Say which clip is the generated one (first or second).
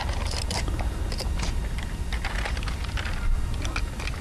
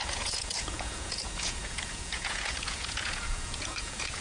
second